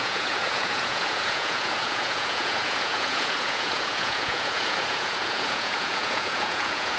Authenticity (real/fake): fake